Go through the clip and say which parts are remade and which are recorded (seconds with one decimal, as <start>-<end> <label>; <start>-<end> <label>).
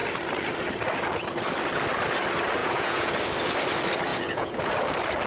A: 0.0-2.6 recorded; 2.6-3.1 remade; 3.1-4.1 recorded; 4.1-4.7 remade; 4.7-5.3 recorded